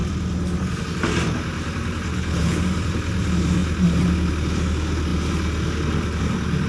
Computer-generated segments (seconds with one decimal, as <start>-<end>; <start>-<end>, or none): 2.1-2.6